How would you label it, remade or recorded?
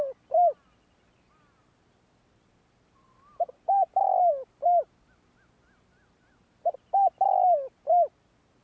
recorded